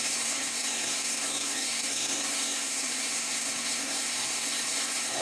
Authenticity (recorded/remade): remade